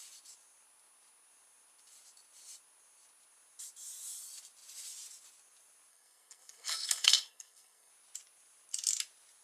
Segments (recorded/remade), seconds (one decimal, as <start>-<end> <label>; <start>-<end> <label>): 0.0-5.9 recorded; 5.9-7.9 remade; 7.9-9.4 recorded